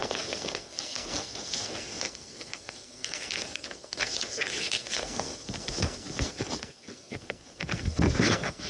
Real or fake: fake